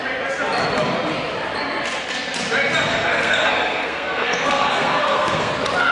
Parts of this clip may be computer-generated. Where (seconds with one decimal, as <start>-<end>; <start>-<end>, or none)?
2.9-5.5